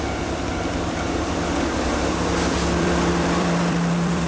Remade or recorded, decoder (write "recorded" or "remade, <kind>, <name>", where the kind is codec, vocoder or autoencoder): remade, vocoder, BigVGAN v2